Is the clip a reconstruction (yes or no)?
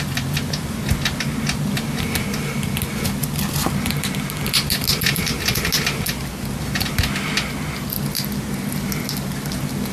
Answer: no